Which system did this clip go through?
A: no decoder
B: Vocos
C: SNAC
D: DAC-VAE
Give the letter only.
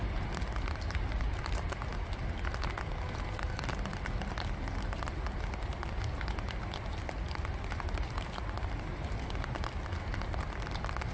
A